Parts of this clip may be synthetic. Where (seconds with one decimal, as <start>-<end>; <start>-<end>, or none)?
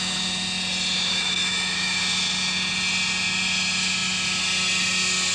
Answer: 1.1-2.0